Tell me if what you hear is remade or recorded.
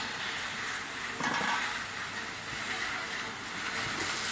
recorded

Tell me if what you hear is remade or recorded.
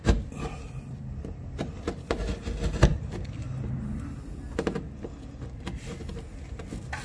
recorded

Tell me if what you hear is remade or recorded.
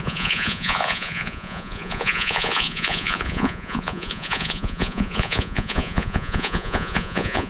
remade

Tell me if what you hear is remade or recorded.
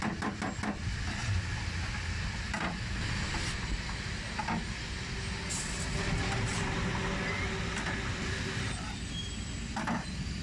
recorded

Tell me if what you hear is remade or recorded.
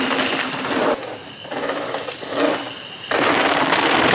recorded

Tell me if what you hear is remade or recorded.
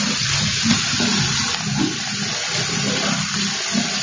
recorded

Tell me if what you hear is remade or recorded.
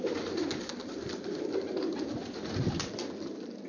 recorded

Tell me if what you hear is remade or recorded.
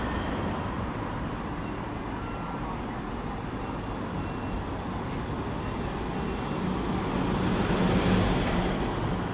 recorded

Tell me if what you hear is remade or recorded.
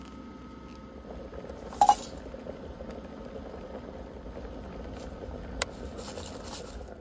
recorded